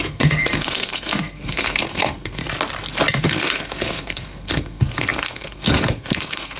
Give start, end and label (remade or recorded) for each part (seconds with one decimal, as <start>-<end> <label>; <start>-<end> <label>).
0.0-2.4 remade; 2.4-3.1 recorded; 3.1-6.6 remade